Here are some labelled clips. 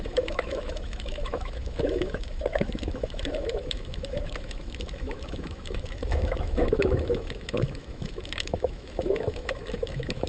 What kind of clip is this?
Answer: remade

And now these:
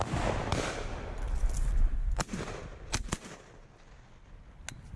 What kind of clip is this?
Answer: recorded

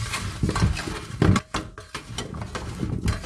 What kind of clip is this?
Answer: recorded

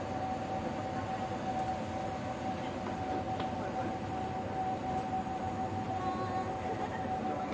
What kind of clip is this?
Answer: recorded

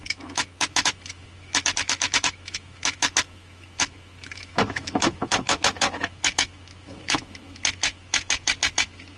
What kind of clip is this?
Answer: remade